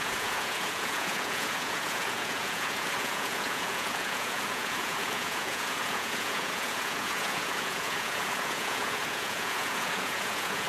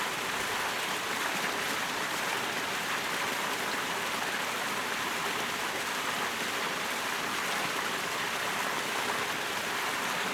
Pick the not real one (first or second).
first